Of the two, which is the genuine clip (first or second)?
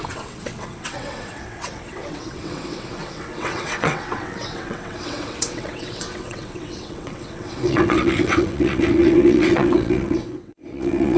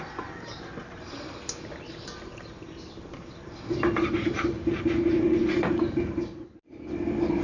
second